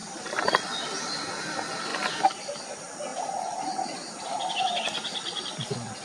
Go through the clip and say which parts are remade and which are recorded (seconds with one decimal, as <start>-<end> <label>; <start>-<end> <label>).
0.0-1.0 remade; 1.0-1.9 recorded; 1.9-2.5 remade; 2.5-3.1 recorded; 3.1-5.4 remade; 5.4-6.0 recorded

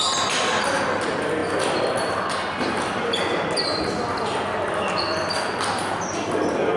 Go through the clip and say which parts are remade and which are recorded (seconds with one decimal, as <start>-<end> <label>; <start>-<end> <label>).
0.0-6.8 recorded

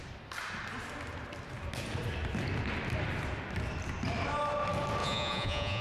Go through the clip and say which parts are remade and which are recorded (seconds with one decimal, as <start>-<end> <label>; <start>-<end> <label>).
0.0-5.0 recorded; 5.0-5.8 remade